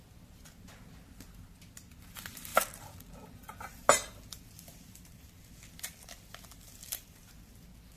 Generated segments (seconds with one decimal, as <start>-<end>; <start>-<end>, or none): 2.5-7.3